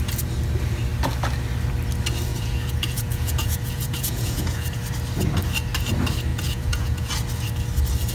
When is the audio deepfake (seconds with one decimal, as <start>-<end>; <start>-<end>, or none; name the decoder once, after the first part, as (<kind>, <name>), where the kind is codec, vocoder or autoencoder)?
2.3-4.8 (vocoder, Vocos); 6.3-7.1